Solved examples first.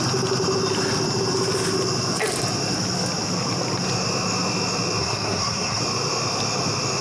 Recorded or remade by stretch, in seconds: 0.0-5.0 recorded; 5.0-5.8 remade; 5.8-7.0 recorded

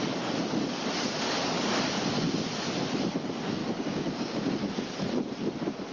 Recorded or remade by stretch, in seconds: 0.0-3.6 recorded; 3.6-4.5 remade; 4.5-5.9 recorded

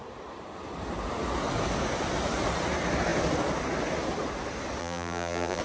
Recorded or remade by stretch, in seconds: 0.0-4.8 recorded; 4.8-5.6 remade

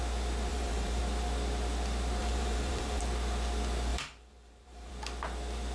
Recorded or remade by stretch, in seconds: 0.0-0.5 recorded; 0.5-1.0 remade; 1.0-2.2 recorded; 2.2-3.0 remade; 3.0-3.9 recorded; 3.9-4.9 remade; 4.9-5.7 recorded

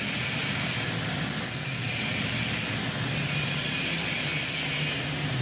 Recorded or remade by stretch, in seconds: 0.0-5.4 recorded